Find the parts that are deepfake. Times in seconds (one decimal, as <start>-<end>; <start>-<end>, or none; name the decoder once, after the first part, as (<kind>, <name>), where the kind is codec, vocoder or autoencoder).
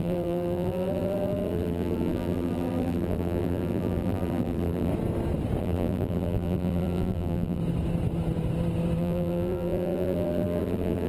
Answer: 0.0-4.9 (vocoder, BigVGAN v2); 5.6-7.6; 9.0-11.1